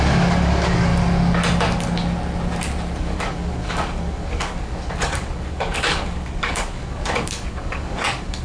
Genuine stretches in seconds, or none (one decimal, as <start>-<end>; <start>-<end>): 0.9-3.0